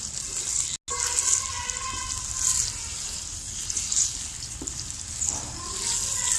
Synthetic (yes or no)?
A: no